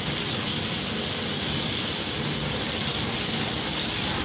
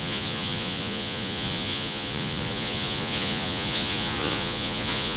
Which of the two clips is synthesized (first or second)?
second